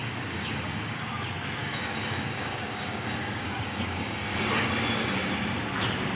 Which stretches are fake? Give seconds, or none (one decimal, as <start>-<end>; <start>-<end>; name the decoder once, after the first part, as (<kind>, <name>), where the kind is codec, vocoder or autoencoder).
0.0-1.1 (codec, DAC); 1.6-5.3